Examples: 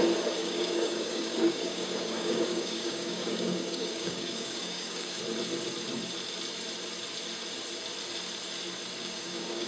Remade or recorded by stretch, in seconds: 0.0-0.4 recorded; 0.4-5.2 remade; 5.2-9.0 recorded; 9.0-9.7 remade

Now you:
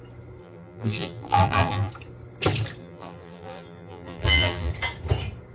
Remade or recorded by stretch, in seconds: 0.0-0.4 recorded; 0.4-1.9 remade; 1.9-2.8 recorded; 2.8-4.7 remade; 4.7-5.5 recorded

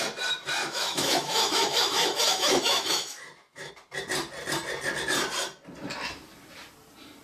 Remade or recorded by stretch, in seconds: 0.0-0.6 recorded; 0.6-3.7 remade; 3.7-7.2 recorded

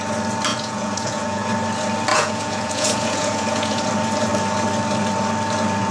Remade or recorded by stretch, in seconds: 0.0-0.5 recorded; 0.5-1.5 remade; 1.5-2.1 recorded; 2.1-3.8 remade; 3.8-5.9 recorded